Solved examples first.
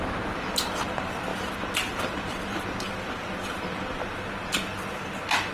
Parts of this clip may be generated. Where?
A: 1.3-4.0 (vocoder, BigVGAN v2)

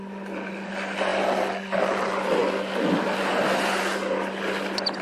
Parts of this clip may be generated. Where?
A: none

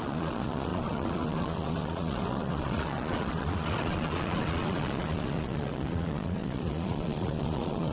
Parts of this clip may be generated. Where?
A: 0.0-7.9 (vocoder, Vocos)